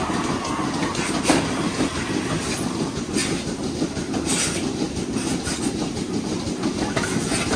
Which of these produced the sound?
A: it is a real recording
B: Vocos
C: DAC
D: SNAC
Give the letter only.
A